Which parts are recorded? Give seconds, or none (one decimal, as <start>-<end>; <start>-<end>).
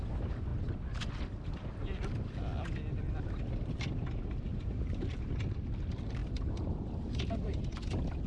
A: 0.0-4.5; 5.3-6.2; 7.6-8.3